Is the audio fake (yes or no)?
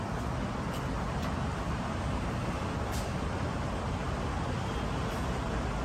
no